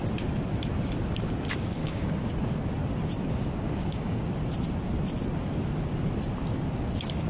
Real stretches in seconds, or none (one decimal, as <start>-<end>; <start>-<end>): 0.0-1.8; 2.3-3.2; 4.3-7.3